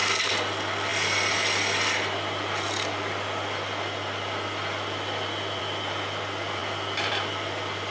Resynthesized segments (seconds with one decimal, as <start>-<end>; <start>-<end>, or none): none